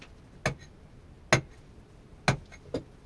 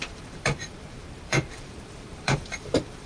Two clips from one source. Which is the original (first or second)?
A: first